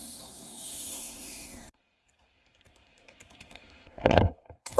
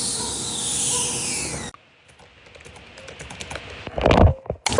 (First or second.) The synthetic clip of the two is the first